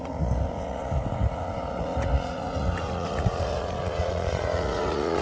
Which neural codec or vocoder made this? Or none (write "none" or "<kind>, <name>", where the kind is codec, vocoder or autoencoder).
vocoder, Vocos